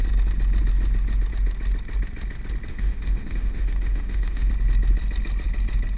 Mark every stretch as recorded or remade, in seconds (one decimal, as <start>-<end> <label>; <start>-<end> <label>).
0.0-2.7 recorded; 2.7-4.5 remade; 4.5-6.0 recorded